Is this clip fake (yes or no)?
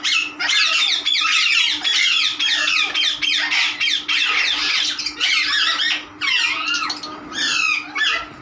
no